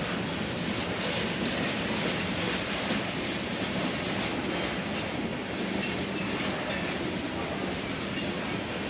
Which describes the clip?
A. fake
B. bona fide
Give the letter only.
B